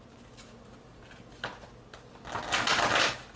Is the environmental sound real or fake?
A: real